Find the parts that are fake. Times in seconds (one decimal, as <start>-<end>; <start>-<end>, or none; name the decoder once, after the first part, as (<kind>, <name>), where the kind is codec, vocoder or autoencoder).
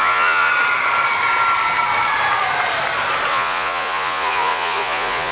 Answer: 0.0-0.5 (vocoder, Vocos); 3.3-5.3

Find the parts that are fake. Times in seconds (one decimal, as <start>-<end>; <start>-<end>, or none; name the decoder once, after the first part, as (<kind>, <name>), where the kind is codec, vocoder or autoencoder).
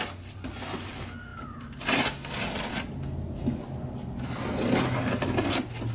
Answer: none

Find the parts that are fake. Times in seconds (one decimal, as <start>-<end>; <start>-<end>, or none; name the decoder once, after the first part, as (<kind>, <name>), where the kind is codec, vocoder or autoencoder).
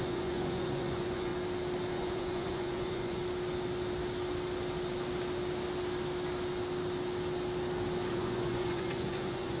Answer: 0.0-1.3 (vocoder, Vocos); 1.9-3.2; 8.1-9.6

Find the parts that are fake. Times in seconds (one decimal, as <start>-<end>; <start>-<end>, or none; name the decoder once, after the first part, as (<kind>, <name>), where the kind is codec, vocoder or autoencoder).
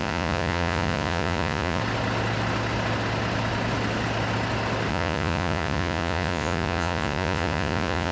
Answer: 0.0-1.8 (vocoder, Vocos); 4.9-8.1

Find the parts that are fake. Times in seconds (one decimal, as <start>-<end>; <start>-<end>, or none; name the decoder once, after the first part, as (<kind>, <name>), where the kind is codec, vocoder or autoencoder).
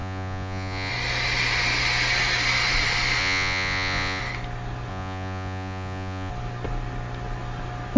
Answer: 0.0-0.9 (vocoder, Vocos); 3.2-4.2; 4.9-6.3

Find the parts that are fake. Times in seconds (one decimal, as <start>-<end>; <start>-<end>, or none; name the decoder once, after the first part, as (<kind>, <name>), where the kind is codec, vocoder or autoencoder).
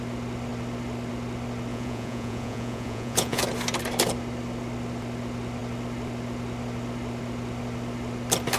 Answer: 1.7-3.4 (vocoder, Vocos)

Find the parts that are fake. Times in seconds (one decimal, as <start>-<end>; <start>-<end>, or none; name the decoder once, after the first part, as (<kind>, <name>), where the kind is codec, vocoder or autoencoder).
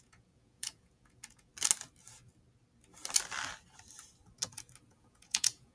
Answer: 0.0-1.5 (vocoder, Vocos); 4.9-5.7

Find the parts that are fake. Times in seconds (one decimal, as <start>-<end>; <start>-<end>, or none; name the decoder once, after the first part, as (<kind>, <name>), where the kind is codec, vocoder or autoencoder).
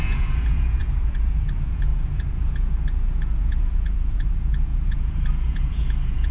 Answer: 0.0-6.3 (vocoder, Vocos)